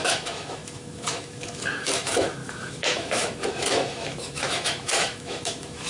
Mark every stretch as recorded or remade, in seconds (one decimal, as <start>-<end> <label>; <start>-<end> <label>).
0.0-5.9 remade